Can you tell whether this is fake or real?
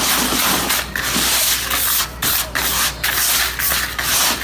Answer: real